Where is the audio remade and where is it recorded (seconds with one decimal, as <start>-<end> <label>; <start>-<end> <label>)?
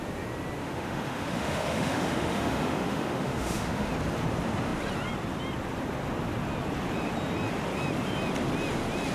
0.0-0.6 recorded; 0.6-3.9 remade; 3.9-9.1 recorded